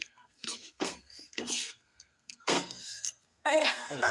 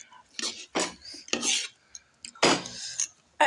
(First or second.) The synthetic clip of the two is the first